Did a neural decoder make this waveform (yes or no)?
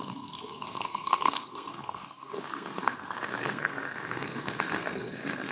yes